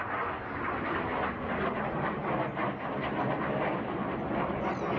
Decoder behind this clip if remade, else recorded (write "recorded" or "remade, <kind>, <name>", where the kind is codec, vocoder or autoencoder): recorded